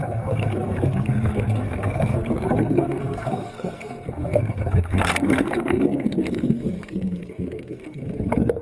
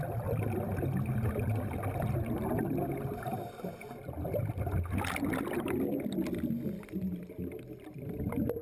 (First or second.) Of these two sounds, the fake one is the first